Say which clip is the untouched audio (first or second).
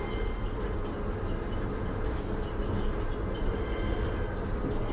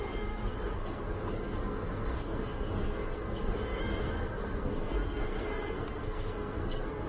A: first